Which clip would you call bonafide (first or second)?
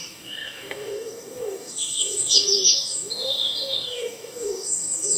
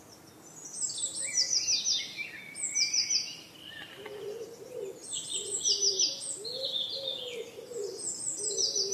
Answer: second